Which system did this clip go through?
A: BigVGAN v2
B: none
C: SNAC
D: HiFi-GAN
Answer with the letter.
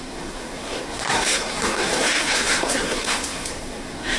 C